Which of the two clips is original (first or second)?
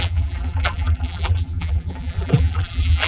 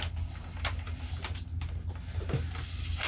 second